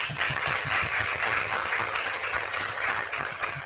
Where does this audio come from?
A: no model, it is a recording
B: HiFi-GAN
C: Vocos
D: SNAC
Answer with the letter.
B